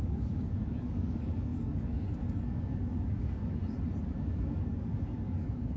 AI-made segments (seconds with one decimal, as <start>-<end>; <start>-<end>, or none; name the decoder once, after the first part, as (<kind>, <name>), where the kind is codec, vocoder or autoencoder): 0.0-3.6 (codec, DAC); 4.2-5.8